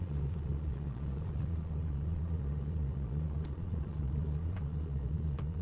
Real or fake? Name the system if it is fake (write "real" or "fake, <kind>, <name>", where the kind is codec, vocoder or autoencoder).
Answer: fake, vocoder, Vocos